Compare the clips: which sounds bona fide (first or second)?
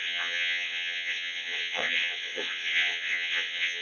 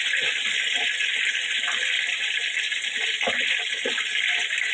second